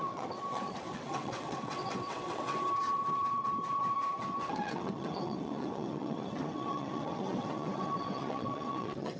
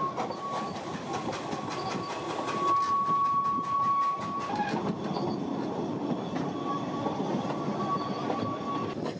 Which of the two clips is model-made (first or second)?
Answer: first